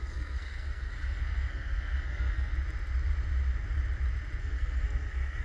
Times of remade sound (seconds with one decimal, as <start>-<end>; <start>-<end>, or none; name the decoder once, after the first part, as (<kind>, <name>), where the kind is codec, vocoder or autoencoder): 0.0-2.5 (codec, SNAC); 4.4-5.4